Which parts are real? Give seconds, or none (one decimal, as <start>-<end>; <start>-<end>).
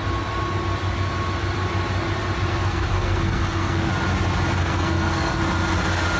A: 0.0-2.5; 3.9-4.6; 5.4-6.2